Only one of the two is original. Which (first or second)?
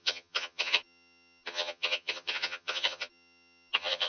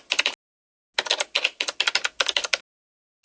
second